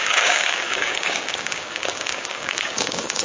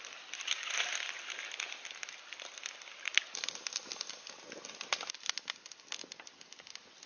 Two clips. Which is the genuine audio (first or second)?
second